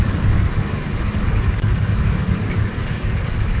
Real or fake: fake